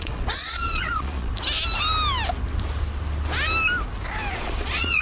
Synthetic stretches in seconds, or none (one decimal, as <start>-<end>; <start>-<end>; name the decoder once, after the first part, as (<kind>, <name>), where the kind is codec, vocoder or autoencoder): 0.0-1.3 (vocoder, Vocos); 4.3-5.0